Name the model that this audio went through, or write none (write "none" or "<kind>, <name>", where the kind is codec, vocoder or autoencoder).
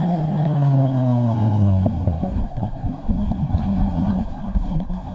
codec, SNAC